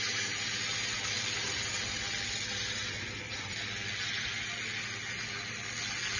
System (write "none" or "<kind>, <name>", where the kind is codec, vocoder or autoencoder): none